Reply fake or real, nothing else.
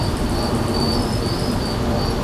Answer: real